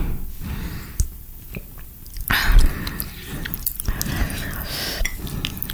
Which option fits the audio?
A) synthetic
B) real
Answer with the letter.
B